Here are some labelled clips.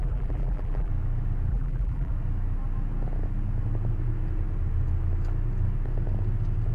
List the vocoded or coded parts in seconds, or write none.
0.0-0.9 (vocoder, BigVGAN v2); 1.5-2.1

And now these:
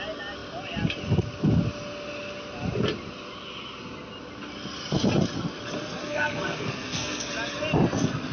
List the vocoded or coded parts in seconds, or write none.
6.0-7.3 (codec, SNAC)

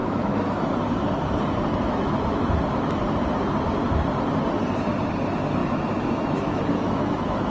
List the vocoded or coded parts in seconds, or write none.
0.0-0.7 (autoencoder, DAC-VAE); 1.7-2.6; 5.6-7.5

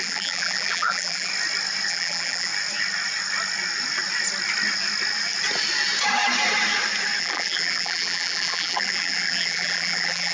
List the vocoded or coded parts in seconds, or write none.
0.0-1.3 (vocoder, BigVGAN v2); 1.9-2.5; 7.2-10.3